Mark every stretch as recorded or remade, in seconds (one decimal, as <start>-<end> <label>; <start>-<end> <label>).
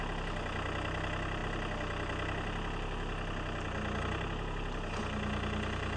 0.0-6.0 recorded